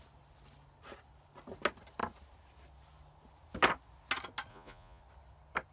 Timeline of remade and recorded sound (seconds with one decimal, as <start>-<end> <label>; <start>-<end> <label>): 0.0-4.5 recorded; 4.5-5.0 remade; 5.0-5.7 recorded